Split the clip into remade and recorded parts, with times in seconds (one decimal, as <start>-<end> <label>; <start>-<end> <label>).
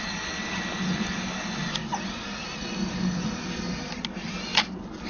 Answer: 0.0-5.1 recorded